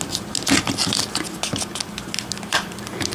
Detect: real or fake real